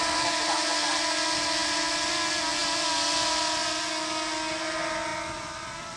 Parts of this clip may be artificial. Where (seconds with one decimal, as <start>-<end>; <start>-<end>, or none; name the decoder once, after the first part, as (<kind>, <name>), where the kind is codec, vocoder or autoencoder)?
5.1-6.0 (vocoder, BigVGAN v2)